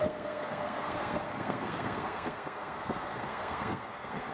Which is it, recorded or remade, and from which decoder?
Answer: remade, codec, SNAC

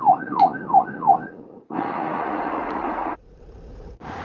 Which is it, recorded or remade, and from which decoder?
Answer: remade, vocoder, Vocos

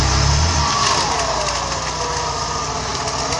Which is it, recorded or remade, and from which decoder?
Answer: recorded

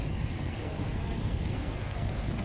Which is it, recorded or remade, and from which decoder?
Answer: remade, codec, SNAC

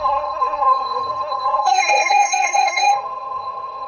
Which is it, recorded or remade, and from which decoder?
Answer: remade, codec, SNAC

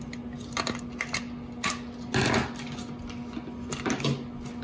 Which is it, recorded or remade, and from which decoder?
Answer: recorded